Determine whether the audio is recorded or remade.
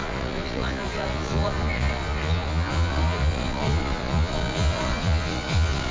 remade